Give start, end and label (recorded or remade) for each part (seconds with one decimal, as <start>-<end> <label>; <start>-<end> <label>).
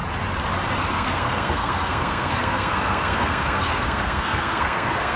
0.0-0.9 recorded; 0.9-5.2 remade